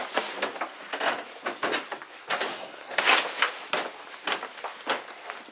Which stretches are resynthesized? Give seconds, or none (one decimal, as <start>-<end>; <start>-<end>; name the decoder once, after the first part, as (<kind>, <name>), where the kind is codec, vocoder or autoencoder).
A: 2.5-3.0 (codec, SNAC)